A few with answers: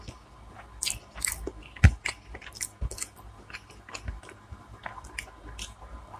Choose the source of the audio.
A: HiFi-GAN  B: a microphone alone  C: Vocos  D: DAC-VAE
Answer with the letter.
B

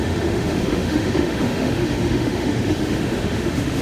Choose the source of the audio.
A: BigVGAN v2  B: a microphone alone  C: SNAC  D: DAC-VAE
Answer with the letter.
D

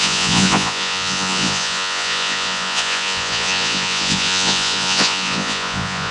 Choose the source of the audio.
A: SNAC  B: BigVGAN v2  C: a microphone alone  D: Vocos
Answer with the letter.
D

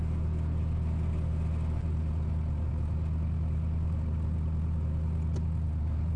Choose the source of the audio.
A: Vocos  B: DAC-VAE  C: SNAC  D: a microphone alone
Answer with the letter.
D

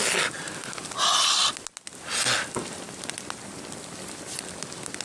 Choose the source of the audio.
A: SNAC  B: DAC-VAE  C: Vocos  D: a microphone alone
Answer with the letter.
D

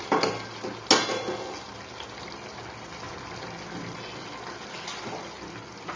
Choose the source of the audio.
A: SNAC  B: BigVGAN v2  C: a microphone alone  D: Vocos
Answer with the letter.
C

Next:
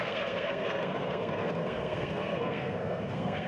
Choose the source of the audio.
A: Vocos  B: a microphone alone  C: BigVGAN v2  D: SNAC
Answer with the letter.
D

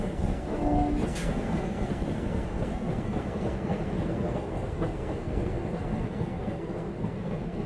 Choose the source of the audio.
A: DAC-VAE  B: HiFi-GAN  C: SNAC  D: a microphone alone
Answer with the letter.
C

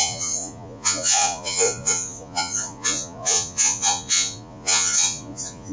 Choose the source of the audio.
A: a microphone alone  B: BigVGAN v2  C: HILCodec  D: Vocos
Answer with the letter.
D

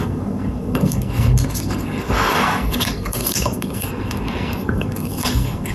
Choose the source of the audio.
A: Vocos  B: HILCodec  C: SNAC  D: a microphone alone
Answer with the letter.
C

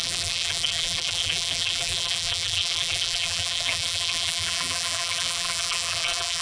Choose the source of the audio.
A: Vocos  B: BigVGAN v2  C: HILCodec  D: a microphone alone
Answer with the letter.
B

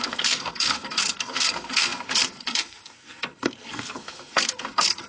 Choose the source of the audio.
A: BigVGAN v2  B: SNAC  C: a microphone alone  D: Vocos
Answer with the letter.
B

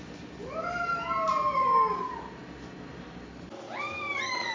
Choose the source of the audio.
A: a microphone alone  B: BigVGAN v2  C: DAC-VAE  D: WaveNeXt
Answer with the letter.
A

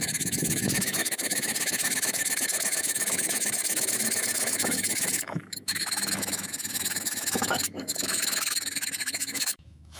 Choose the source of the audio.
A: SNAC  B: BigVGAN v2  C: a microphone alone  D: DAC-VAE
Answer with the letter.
D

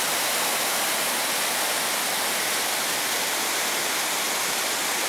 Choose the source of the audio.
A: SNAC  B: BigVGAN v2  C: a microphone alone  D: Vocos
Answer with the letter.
C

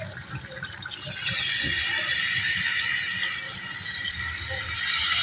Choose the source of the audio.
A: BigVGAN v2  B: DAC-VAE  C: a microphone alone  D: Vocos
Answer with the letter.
C